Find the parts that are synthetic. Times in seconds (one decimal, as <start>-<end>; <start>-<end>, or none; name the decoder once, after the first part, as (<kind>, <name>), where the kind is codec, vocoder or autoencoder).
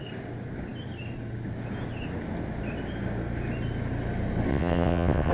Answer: 4.5-5.3 (vocoder, WaveNeXt)